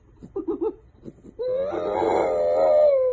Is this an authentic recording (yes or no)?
yes